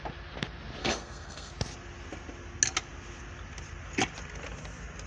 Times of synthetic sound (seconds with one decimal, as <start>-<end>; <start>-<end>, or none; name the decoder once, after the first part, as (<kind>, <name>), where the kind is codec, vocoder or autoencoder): 0.8-1.5 (codec, SNAC)